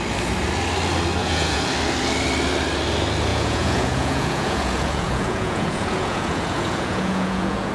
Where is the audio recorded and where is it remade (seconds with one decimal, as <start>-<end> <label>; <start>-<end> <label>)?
0.0-1.2 recorded; 1.2-1.7 remade; 1.7-3.3 recorded; 3.3-7.7 remade

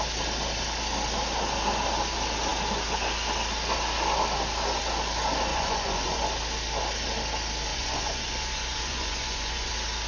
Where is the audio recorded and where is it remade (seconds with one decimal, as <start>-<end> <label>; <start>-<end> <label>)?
0.0-5.5 recorded; 5.5-6.2 remade; 6.2-7.7 recorded; 7.7-9.7 remade; 9.7-10.1 recorded

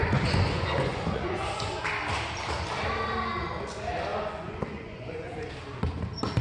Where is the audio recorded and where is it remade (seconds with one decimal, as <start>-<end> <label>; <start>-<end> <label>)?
0.0-1.7 remade; 1.7-4.1 recorded; 4.1-5.5 remade; 5.5-6.4 recorded

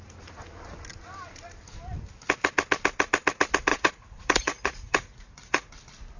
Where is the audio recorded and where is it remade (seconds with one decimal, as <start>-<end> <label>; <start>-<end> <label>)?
0.0-3.7 recorded; 3.7-5.7 remade; 5.7-6.2 recorded

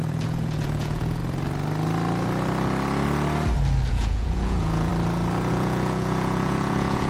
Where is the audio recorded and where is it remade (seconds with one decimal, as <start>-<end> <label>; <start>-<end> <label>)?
0.0-1.2 remade; 1.2-3.9 recorded; 3.9-4.9 remade; 4.9-5.5 recorded; 5.5-7.1 remade

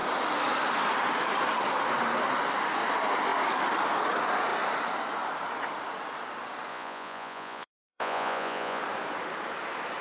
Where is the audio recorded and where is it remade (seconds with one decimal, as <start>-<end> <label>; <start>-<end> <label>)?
0.0-6.7 recorded; 6.7-8.8 remade; 8.8-10.0 recorded

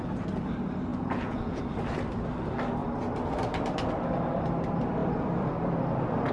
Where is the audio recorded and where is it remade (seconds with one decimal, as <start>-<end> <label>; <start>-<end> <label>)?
0.0-0.9 recorded; 0.9-1.6 remade; 1.6-6.3 recorded